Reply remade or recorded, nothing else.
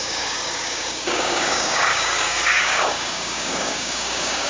remade